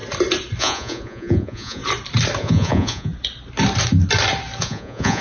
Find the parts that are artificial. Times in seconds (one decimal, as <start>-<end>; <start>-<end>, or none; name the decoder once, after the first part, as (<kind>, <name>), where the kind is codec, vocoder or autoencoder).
0.6-1.8 (vocoder, Vocos); 2.4-3.1; 4.6-5.2